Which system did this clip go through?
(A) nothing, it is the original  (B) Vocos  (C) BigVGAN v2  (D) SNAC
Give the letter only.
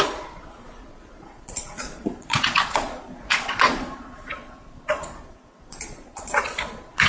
B